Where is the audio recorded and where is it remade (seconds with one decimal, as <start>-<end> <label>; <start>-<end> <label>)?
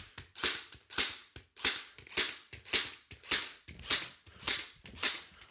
0.0-1.2 remade; 1.2-3.4 recorded; 3.4-3.9 remade; 3.9-4.7 recorded; 4.7-5.5 remade